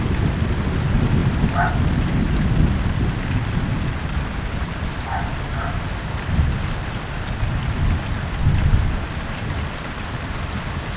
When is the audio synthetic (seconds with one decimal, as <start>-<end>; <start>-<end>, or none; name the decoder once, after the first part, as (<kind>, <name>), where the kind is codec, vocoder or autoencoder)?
none